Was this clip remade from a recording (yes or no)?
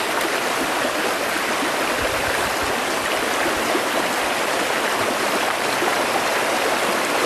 no